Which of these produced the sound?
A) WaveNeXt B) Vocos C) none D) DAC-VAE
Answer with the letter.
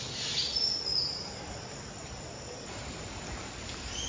C